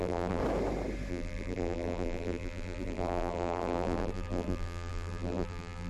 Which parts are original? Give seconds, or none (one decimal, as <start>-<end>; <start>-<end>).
0.4-1.1